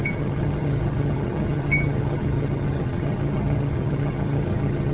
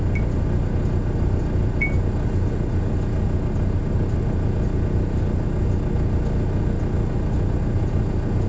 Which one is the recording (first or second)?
second